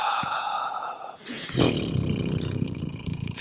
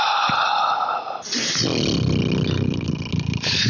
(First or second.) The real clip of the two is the second